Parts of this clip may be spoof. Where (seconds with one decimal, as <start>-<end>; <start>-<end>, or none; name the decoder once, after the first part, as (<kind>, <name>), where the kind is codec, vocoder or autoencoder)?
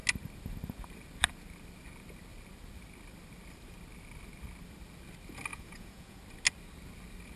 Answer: 5.5-6.2 (vocoder, Vocos)